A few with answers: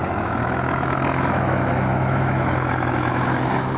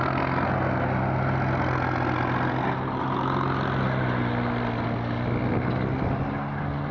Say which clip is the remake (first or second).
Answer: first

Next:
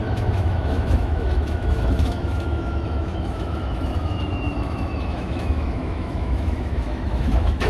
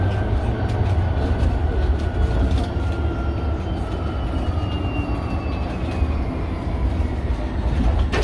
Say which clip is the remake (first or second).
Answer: first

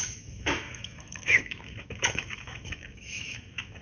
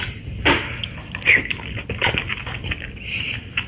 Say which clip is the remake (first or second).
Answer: first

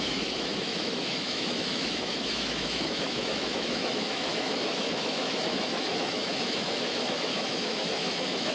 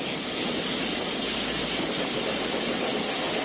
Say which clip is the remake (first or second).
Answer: first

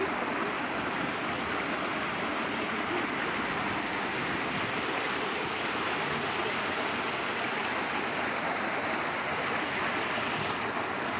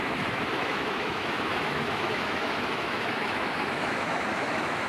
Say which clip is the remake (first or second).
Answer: second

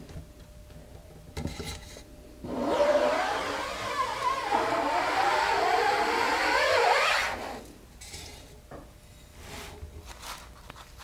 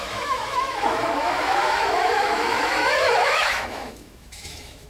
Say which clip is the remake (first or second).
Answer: second